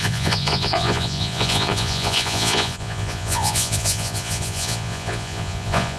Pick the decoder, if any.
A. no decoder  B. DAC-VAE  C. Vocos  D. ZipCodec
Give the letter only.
C